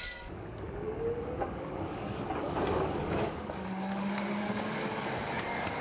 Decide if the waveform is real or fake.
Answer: fake